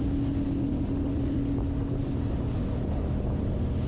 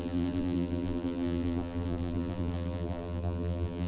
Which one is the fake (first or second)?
second